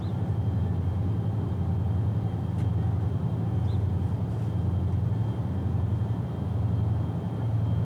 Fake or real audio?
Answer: real